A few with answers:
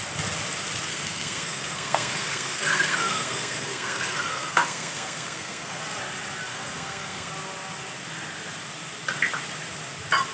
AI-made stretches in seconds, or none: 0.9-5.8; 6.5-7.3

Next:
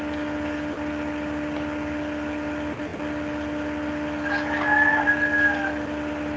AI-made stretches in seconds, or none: none

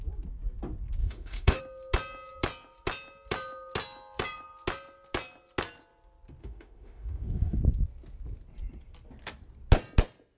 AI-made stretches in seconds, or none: 1.0-1.6; 6.4-7.6

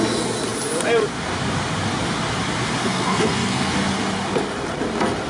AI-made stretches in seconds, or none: 2.8-3.7

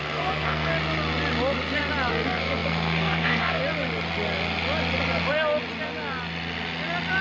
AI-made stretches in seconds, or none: 0.0-0.7; 2.1-3.6